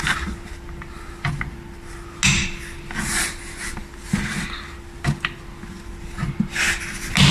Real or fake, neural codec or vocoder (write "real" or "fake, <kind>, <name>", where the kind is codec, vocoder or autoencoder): real